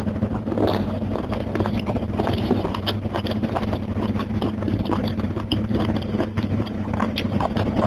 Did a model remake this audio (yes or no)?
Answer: yes